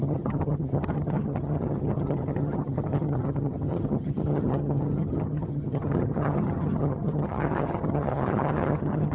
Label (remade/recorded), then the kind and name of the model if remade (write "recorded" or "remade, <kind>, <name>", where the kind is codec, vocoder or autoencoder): remade, vocoder, HiFi-GAN